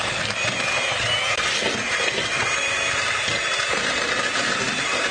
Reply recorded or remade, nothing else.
recorded